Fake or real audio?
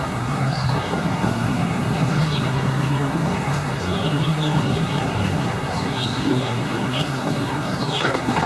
fake